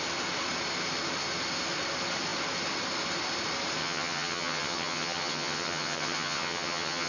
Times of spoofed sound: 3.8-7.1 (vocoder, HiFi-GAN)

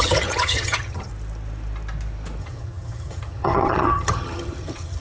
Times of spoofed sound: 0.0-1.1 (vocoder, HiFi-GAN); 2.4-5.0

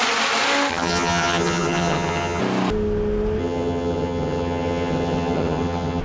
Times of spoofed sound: 0.7-2.4 (vocoder, HiFi-GAN); 3.4-6.0